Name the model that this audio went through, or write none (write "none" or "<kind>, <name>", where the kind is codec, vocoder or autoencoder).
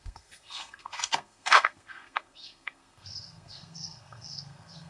codec, SNAC